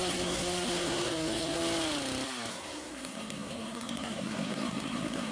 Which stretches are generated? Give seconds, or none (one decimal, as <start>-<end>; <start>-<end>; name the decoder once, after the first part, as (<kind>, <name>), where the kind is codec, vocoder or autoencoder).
0.0-1.6 (codec, SNAC); 2.5-5.3